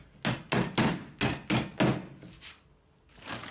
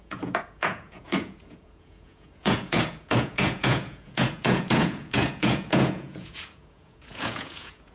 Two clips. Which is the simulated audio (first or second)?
second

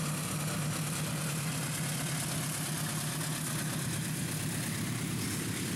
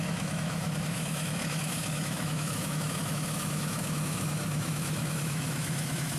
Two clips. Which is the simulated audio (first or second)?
second